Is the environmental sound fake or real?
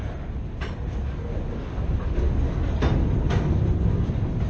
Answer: real